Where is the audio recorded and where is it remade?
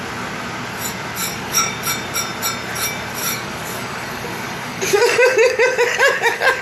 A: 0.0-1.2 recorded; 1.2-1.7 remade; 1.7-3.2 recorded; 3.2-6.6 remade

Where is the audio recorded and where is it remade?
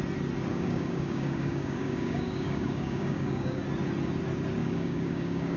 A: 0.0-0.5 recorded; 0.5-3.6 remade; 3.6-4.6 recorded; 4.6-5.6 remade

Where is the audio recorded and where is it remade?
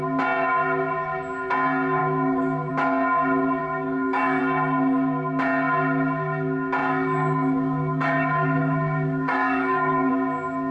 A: 0.0-2.0 recorded; 2.0-2.7 remade; 2.7-3.6 recorded; 3.6-4.4 remade; 4.4-6.8 recorded; 6.8-10.1 remade; 10.1-10.7 recorded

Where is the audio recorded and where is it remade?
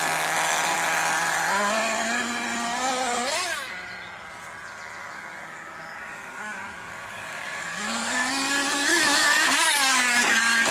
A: 0.0-5.0 recorded; 5.0-8.3 remade; 8.3-8.9 recorded; 8.9-10.7 remade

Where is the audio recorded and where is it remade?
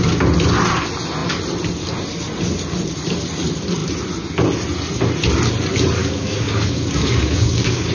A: 0.0-6.0 recorded; 6.0-7.9 remade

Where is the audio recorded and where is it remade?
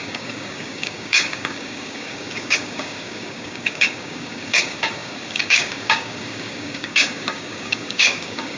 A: 0.0-8.6 remade